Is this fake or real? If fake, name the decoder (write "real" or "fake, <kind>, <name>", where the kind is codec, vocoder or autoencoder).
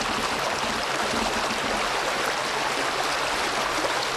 real